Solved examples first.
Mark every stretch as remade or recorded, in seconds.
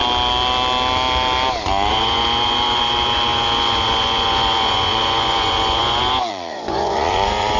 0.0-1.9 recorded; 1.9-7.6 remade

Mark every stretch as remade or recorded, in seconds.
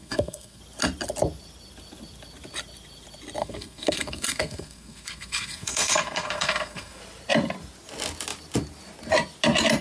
0.0-0.6 remade; 0.6-3.4 recorded; 3.4-7.0 remade; 7.0-9.8 recorded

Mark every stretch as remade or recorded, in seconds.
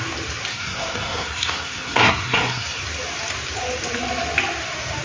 0.0-0.5 recorded; 0.5-2.8 remade; 2.8-5.0 recorded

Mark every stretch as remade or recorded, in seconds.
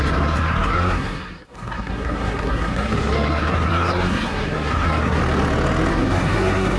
0.0-5.2 remade; 5.2-5.9 recorded; 5.9-6.8 remade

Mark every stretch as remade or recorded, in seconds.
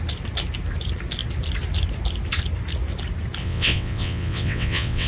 0.0-3.4 recorded; 3.4-5.1 remade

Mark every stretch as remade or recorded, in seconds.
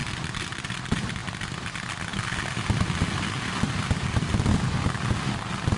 0.0-5.8 recorded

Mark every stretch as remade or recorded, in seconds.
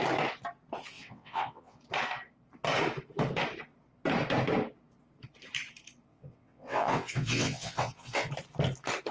0.0-0.9 recorded; 0.9-1.8 remade; 1.8-6.1 recorded; 6.1-8.3 remade; 8.3-9.1 recorded